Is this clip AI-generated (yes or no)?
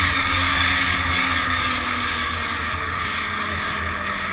yes